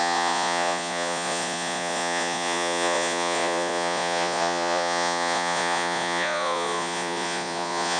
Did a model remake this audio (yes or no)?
yes